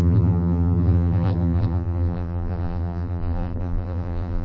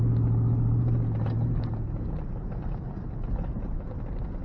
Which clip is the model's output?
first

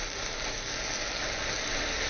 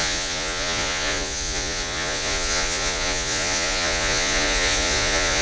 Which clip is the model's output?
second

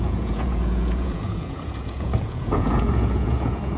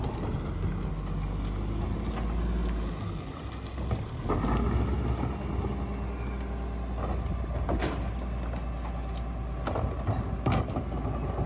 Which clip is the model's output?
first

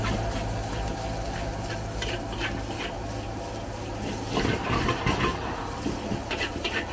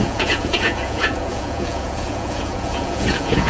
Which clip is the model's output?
second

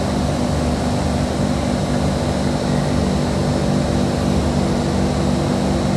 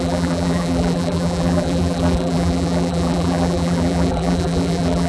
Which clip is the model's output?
second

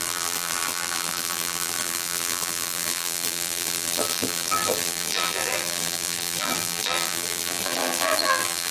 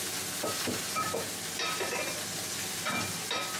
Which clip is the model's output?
first